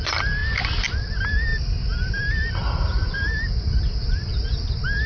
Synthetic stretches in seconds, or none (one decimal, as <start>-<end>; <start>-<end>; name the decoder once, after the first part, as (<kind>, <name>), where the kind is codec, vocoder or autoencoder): none